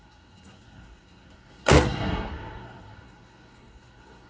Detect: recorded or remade remade